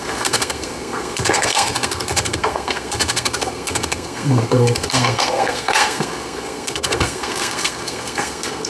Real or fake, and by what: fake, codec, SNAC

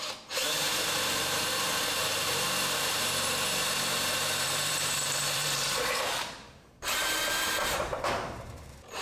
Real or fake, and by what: fake, vocoder, BigVGAN v2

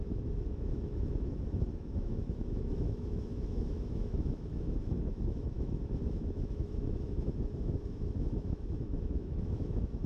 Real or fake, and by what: fake, autoencoder, DAC-VAE